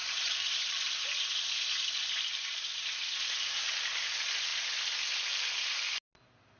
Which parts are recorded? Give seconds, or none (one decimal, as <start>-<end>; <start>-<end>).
1.1-6.6